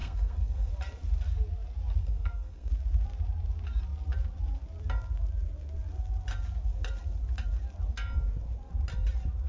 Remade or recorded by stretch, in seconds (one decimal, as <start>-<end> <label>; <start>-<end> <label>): 0.0-0.7 remade; 0.7-2.0 recorded; 2.0-2.7 remade; 2.7-9.5 recorded